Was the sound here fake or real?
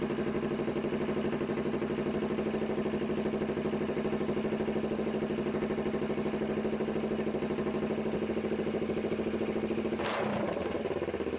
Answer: real